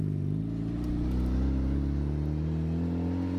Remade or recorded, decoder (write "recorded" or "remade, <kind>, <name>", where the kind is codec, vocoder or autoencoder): recorded